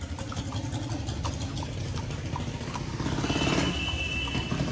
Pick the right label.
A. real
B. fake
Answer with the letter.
A